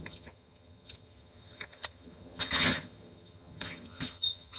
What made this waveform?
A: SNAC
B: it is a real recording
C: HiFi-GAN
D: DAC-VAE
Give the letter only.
C